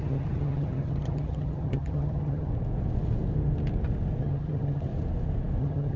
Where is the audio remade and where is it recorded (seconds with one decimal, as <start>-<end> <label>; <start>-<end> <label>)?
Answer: 0.0-2.5 remade; 2.5-4.2 recorded; 4.2-4.9 remade; 4.9-5.6 recorded; 5.6-6.0 remade